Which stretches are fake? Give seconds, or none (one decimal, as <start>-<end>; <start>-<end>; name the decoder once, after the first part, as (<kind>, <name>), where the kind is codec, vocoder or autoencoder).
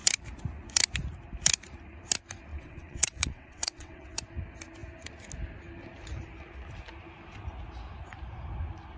2.5-4.1 (vocoder, WaveNeXt)